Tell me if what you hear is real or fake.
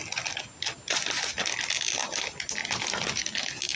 real